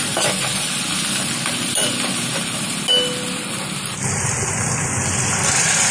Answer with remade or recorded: recorded